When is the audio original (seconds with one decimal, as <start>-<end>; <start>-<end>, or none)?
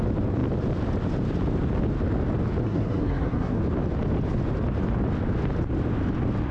0.0-2.6; 3.6-6.5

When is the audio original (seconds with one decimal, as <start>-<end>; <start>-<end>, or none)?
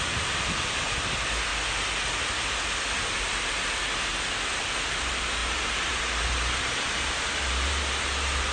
1.5-3.2; 4.1-4.8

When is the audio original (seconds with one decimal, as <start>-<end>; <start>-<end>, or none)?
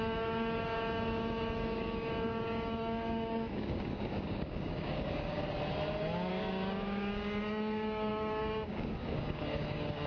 5.4-6.3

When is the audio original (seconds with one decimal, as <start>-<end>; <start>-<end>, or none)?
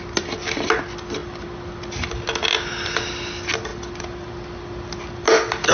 0.0-5.7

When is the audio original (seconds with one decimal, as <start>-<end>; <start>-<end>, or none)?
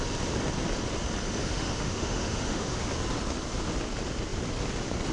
0.0-1.4; 2.9-5.1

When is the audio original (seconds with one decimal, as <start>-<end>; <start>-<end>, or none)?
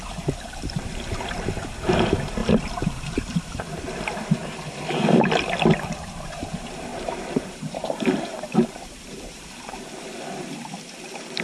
0.0-2.4; 3.6-6.9; 9.5-11.4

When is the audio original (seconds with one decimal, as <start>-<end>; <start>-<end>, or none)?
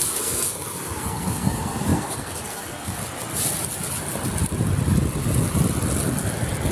3.0-6.7